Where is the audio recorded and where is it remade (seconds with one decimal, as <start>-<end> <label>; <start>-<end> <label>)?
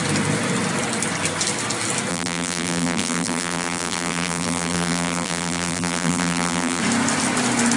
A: 0.0-2.1 recorded; 2.1-6.8 remade; 6.8-7.8 recorded